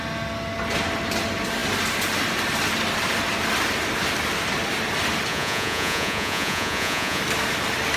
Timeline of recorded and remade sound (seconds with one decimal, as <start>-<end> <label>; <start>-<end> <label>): 0.0-5.3 recorded; 5.3-7.2 remade; 7.2-8.0 recorded